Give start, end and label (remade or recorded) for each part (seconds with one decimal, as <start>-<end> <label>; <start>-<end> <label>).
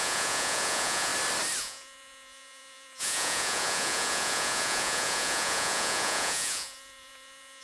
0.0-1.1 remade; 1.1-1.6 recorded; 1.6-7.6 remade